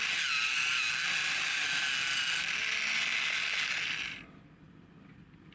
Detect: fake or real real